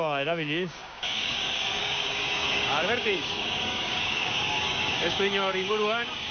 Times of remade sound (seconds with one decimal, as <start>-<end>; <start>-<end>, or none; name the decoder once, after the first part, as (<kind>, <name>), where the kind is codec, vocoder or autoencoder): 0.0-6.3 (codec, DAC)